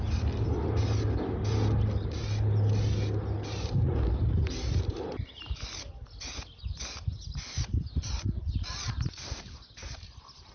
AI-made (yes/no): no